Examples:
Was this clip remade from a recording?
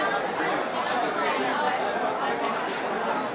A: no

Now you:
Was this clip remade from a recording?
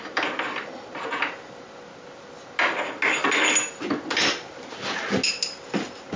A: no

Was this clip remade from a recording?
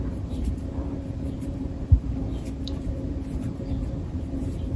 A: yes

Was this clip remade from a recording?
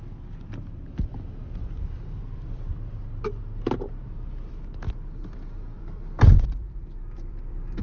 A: yes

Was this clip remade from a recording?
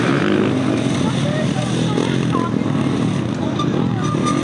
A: no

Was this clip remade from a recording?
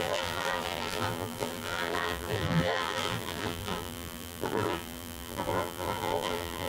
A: yes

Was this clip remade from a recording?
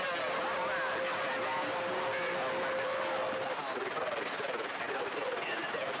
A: no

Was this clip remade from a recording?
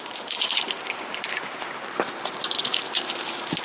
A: yes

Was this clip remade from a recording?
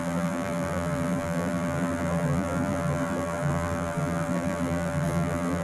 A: yes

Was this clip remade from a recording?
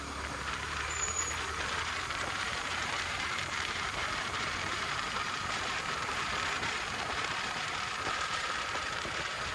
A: yes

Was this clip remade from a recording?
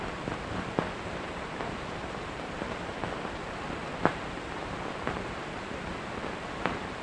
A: yes